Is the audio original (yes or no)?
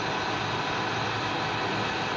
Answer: yes